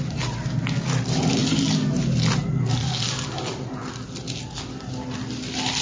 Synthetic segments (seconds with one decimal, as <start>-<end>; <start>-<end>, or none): none